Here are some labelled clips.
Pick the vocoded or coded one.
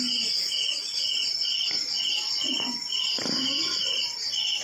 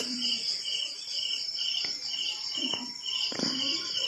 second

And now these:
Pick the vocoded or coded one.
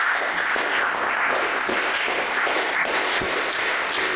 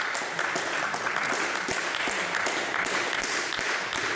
first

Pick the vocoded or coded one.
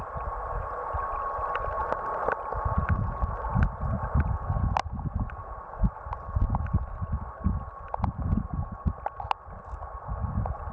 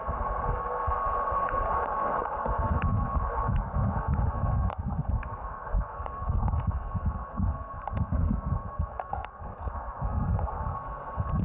second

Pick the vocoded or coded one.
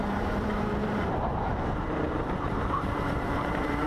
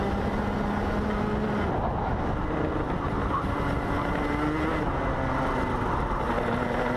first